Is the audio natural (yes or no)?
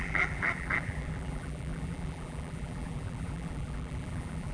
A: no